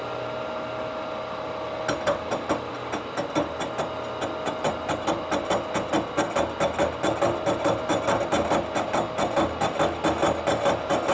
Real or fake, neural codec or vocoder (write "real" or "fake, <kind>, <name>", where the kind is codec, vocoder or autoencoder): real